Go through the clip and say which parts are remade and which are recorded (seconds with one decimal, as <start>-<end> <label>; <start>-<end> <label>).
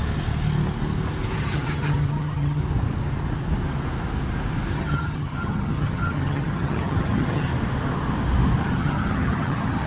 0.0-1.4 recorded; 1.4-2.6 remade; 2.6-4.7 recorded; 4.7-7.5 remade; 7.5-8.6 recorded; 8.6-9.9 remade